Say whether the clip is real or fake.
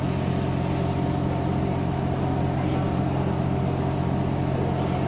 real